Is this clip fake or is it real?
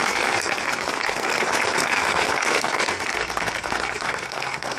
fake